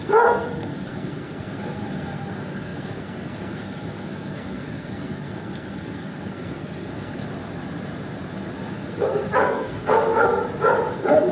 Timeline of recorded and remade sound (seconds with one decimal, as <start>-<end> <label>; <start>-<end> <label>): 0.0-7.2 remade; 7.2-8.7 recorded; 8.7-10.4 remade; 10.4-10.9 recorded; 10.9-11.3 remade